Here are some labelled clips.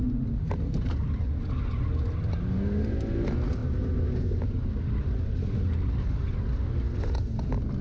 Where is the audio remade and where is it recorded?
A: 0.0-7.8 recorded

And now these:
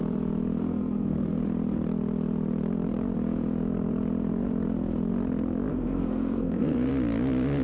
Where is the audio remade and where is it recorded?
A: 0.0-0.6 recorded; 0.6-1.4 remade; 1.4-5.7 recorded; 5.7-6.9 remade; 6.9-7.6 recorded

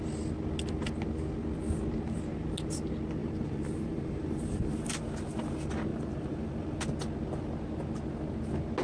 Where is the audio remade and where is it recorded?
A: 0.0-3.2 recorded; 3.2-5.0 remade; 5.0-5.9 recorded; 5.9-6.8 remade; 6.8-8.8 recorded

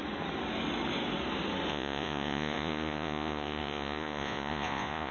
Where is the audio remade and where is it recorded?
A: 0.0-1.7 recorded; 1.7-5.1 remade